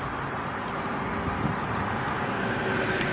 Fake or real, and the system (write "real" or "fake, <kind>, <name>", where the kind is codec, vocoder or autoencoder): real